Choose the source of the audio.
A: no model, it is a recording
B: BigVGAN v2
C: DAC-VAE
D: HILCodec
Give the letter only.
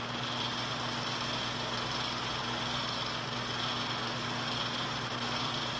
A